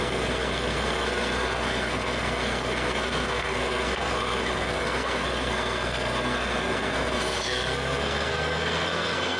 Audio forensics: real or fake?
fake